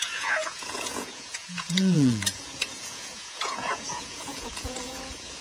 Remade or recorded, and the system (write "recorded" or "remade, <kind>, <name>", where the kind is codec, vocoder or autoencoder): remade, vocoder, Vocos